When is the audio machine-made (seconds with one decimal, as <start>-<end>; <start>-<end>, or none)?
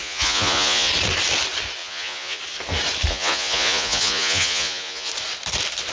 0.0-0.9; 1.8-2.4; 3.1-5.1